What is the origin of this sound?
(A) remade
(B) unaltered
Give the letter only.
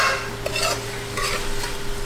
B